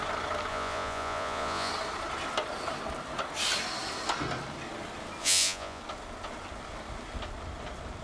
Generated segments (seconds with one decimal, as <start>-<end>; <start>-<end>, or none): 0.5-1.7; 5.2-5.8